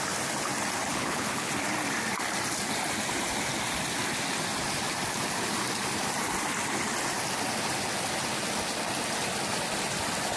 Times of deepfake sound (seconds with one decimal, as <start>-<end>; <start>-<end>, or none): 0.9-1.5